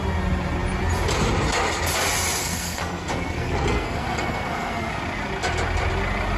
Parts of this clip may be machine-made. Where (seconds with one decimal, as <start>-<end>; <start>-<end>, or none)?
2.4-4.9